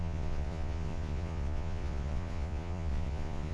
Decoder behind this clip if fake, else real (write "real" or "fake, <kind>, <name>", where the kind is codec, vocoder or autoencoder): fake, vocoder, Vocos